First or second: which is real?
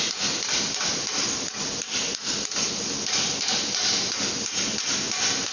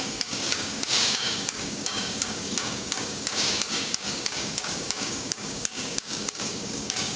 first